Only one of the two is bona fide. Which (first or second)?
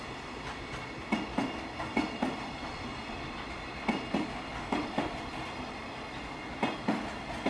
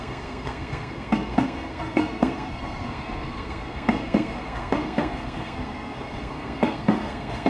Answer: first